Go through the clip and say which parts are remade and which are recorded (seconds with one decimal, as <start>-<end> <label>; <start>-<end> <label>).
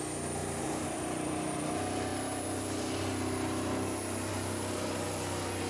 0.0-0.4 recorded; 0.4-1.7 remade; 1.7-5.7 recorded